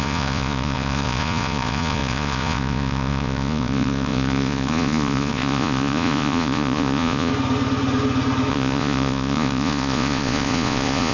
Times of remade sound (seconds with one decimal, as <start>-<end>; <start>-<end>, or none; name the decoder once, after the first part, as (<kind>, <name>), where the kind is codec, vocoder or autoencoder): 0.0-7.3 (vocoder, Vocos); 8.5-11.1